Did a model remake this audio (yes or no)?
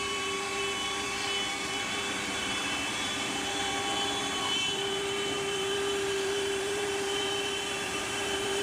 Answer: yes